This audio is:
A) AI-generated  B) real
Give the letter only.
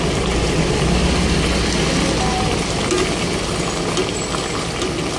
B